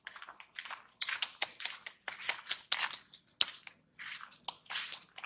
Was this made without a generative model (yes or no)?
yes